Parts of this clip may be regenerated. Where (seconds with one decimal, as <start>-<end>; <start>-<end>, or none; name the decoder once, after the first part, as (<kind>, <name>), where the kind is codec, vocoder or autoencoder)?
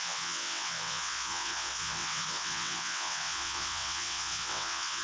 0.0-5.0 (vocoder, WaveNeXt)